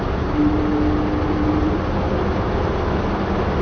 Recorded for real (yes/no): yes